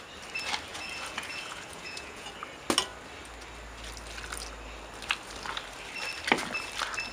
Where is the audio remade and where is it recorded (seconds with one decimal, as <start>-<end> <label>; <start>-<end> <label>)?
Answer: 0.0-0.7 recorded; 0.7-2.3 remade; 2.3-7.1 recorded